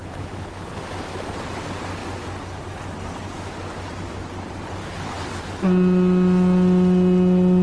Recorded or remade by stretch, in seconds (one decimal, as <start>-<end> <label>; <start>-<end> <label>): 0.0-0.8 remade; 0.8-4.8 recorded; 4.8-5.4 remade; 5.4-7.6 recorded